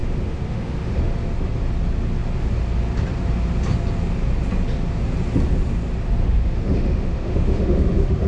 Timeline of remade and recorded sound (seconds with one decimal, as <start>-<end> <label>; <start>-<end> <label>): 0.0-1.0 remade; 1.0-6.2 recorded; 6.2-8.3 remade

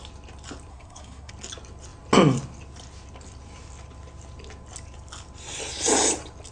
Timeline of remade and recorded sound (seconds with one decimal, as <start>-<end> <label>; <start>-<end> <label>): 0.0-0.7 recorded; 0.7-1.3 remade; 1.3-6.5 recorded

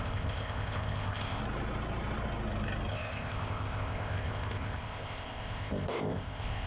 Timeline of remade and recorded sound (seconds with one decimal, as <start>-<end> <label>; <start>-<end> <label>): 0.0-1.4 remade; 1.4-2.9 recorded; 2.9-6.7 remade

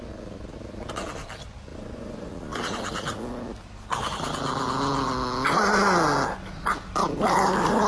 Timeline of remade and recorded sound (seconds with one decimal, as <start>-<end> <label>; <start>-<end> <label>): 0.0-1.7 recorded; 1.7-2.3 remade; 2.3-7.9 recorded